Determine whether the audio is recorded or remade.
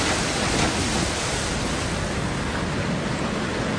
recorded